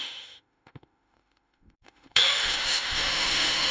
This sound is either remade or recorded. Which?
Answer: remade